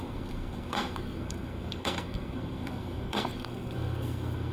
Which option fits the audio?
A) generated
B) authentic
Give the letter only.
A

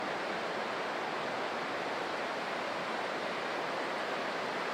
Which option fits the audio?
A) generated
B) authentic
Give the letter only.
B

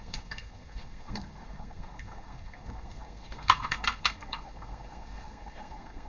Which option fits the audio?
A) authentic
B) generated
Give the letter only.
B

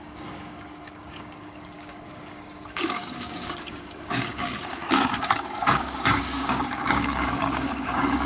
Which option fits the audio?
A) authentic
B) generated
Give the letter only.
B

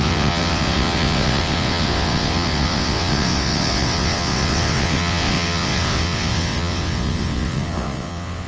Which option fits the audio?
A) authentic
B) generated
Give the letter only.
B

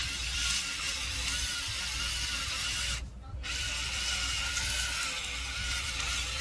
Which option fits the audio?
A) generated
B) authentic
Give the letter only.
B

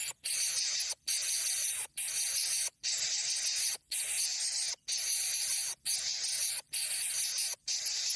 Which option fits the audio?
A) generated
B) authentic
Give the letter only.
B